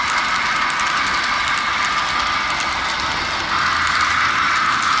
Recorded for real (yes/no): yes